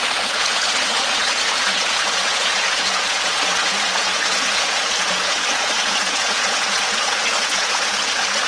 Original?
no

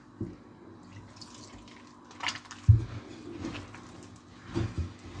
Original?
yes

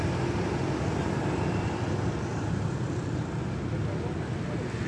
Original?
yes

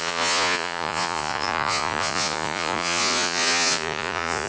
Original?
no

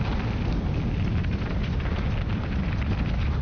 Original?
yes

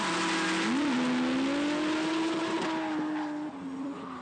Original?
yes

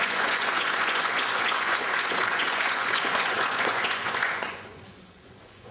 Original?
no